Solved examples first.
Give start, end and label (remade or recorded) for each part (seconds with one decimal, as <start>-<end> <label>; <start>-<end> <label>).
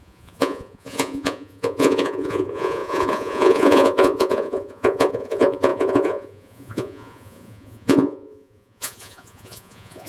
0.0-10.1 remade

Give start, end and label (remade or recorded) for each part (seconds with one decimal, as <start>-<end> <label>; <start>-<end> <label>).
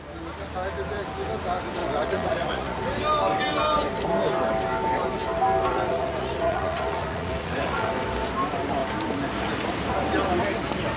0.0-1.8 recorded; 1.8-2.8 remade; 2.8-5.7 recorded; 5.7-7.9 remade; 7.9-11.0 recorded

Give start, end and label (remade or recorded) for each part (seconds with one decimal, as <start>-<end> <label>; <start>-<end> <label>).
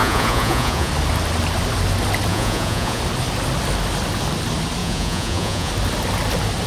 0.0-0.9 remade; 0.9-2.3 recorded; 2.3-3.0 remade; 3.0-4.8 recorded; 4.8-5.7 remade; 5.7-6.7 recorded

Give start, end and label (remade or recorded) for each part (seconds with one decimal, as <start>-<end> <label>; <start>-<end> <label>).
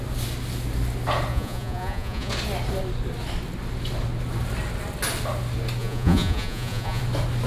0.0-1.3 recorded; 1.3-2.3 remade; 2.3-5.8 recorded; 5.8-7.0 remade; 7.0-7.5 recorded